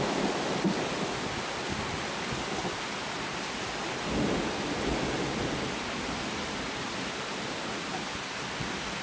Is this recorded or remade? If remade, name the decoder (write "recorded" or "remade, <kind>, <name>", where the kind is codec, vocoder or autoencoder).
recorded